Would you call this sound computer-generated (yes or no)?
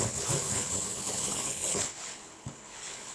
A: yes